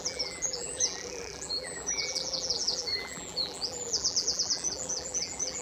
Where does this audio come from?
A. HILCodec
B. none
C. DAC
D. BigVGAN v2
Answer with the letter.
D